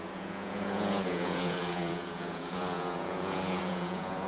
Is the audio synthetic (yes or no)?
yes